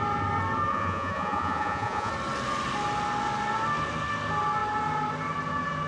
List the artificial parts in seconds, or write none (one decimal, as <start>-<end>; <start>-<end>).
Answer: 0.7-2.1